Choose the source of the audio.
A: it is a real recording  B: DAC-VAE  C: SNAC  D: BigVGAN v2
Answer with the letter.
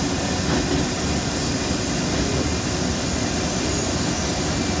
A